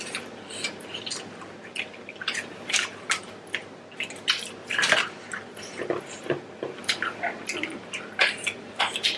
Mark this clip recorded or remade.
recorded